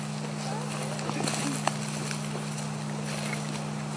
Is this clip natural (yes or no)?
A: yes